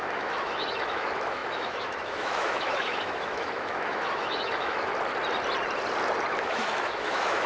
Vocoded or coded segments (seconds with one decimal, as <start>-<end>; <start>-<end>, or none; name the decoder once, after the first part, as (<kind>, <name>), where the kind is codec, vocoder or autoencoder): 0.0-4.9 (autoencoder, DAC-VAE); 6.4-7.5